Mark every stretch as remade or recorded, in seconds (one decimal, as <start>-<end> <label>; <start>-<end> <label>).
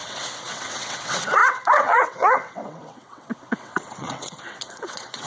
0.0-5.3 remade